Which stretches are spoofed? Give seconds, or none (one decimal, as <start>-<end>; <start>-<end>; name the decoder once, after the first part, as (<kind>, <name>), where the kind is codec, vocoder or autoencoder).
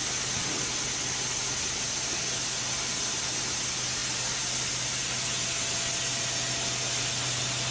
none